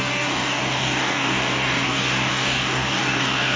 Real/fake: fake